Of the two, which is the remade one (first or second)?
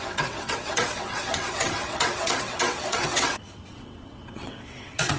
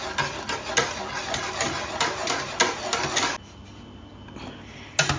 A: first